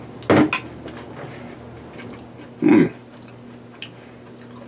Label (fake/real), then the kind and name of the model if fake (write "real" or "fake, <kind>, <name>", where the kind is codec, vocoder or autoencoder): real